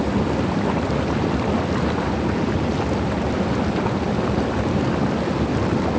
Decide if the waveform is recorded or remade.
recorded